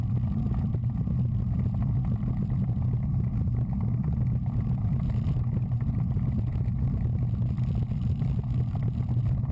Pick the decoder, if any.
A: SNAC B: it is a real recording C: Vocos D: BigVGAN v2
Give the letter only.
B